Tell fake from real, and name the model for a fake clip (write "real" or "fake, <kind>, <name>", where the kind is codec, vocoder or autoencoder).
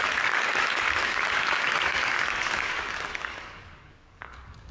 fake, codec, DAC